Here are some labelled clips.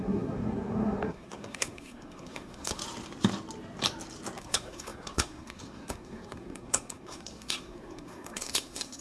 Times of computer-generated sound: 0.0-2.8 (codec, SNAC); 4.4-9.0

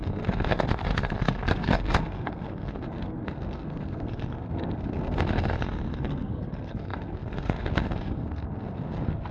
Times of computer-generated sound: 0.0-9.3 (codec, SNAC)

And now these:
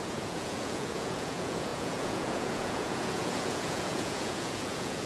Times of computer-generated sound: 0.0-5.1 (vocoder, Vocos)

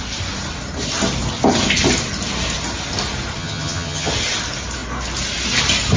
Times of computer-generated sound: 3.4-4.1 (vocoder, HiFi-GAN)

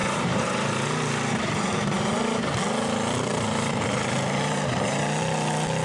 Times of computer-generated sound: 0.0-2.5 (vocoder, BigVGAN v2); 3.3-5.0